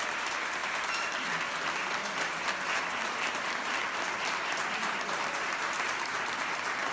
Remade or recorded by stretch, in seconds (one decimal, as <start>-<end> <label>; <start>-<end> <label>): 0.0-6.9 recorded